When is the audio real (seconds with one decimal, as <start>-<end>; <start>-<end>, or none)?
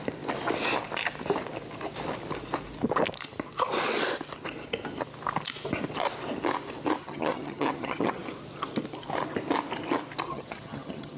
0.0-7.0; 8.2-10.3